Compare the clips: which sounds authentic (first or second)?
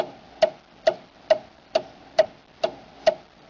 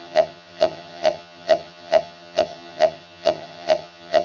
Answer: first